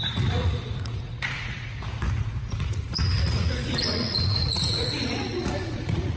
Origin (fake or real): fake